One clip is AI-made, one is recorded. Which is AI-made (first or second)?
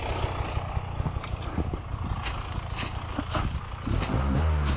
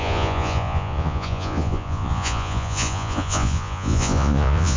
second